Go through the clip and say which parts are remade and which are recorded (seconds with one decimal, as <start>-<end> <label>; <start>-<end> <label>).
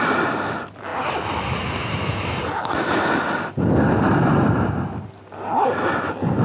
0.0-6.4 recorded